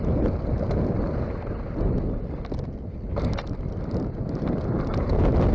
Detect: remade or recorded recorded